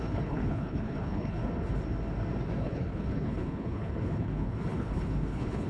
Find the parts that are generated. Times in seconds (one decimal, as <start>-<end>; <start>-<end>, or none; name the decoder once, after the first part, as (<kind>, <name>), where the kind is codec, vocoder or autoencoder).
0.0-1.4 (codec, HILCodec); 2.6-5.7